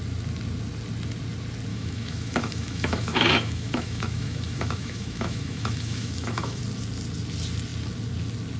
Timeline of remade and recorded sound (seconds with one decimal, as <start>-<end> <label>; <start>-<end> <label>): 0.0-1.7 recorded; 1.7-6.6 remade; 6.6-8.6 recorded